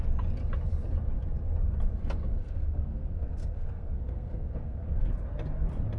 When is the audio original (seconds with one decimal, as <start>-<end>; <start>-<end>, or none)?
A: 0.0-2.3; 5.1-6.0